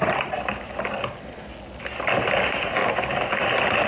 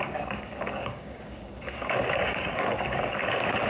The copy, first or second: second